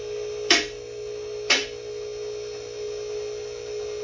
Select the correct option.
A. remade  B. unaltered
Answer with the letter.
B